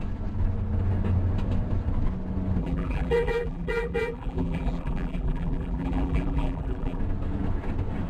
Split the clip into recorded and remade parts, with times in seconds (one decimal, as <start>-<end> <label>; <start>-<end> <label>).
0.0-2.6 recorded; 2.6-7.0 remade; 7.0-8.1 recorded